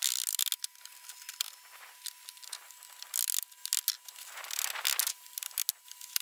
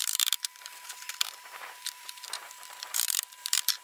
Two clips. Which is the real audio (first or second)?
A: first